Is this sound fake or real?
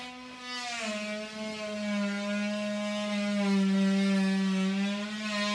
real